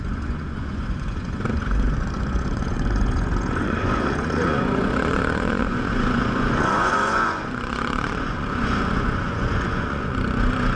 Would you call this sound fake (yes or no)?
yes